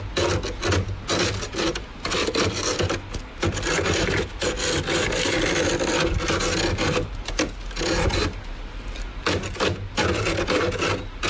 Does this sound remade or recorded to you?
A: recorded